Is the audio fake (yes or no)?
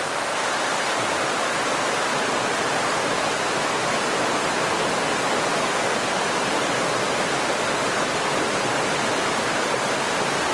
no